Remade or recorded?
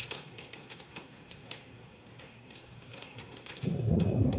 remade